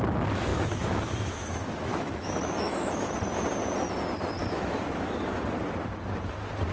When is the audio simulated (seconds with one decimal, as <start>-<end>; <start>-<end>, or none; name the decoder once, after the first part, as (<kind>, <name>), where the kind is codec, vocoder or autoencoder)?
0.5-3.1 (autoencoder, DAC-VAE); 4.4-5.4